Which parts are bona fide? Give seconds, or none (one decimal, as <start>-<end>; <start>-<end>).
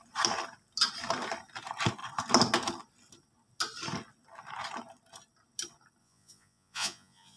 0.0-6.0